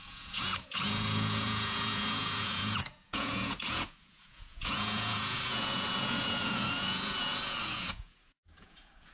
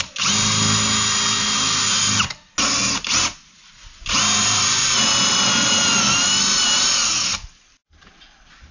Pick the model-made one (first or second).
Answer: first